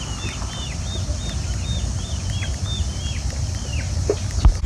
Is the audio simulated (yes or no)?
no